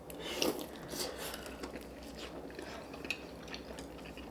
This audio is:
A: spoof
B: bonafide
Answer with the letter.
B